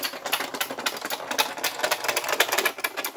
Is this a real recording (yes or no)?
yes